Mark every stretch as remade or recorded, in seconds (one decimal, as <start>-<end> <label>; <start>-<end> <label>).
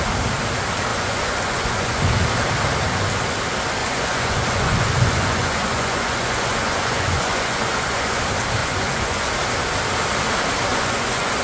0.0-0.9 recorded; 0.9-2.1 remade; 2.1-3.8 recorded; 3.8-8.2 remade; 8.2-8.6 recorded; 8.6-9.3 remade; 9.3-10.7 recorded; 10.7-11.4 remade